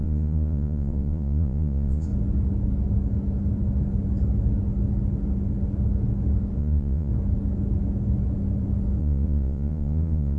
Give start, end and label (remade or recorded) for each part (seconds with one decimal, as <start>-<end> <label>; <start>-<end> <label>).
0.0-2.1 remade; 2.1-6.6 recorded; 6.6-7.1 remade; 7.1-9.0 recorded; 9.0-10.4 remade